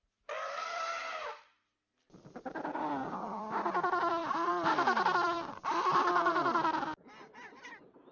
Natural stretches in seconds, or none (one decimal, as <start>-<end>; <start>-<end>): 0.0-2.7; 6.1-8.1